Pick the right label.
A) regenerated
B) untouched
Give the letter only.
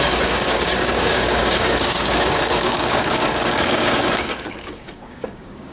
A